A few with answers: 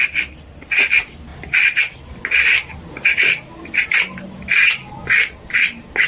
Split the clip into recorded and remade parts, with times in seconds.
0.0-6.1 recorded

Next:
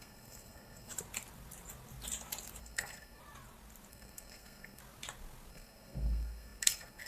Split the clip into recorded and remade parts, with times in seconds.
0.0-0.9 remade; 0.9-2.6 recorded; 2.6-3.2 remade; 3.2-3.9 recorded; 3.9-4.8 remade; 4.8-5.5 recorded; 5.5-7.1 remade

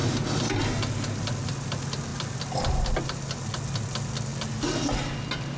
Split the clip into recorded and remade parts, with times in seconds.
0.0-5.6 recorded

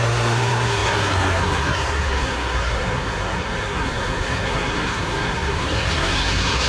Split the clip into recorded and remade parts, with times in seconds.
0.0-6.7 remade

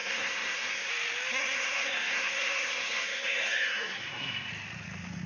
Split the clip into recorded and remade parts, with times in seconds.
0.0-0.9 remade; 0.9-1.3 recorded; 1.3-4.5 remade; 4.5-5.3 recorded

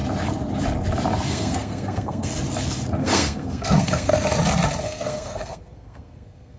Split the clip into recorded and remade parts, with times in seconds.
0.0-1.3 recorded; 1.3-2.3 remade; 2.3-3.0 recorded; 3.0-4.1 remade; 4.1-4.8 recorded; 4.8-6.6 remade

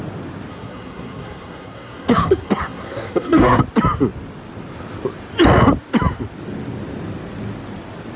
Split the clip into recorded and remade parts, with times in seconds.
0.0-0.5 recorded; 0.5-3.6 remade; 3.6-8.2 recorded